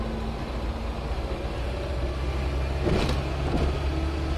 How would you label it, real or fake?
real